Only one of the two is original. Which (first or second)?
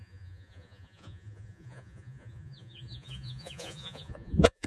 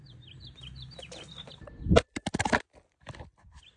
second